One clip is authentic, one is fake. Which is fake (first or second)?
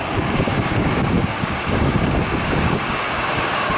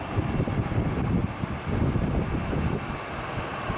first